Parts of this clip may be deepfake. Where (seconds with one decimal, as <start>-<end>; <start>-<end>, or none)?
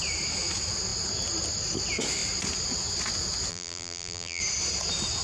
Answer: 3.5-4.4